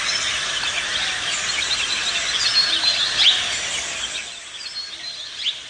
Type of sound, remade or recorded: recorded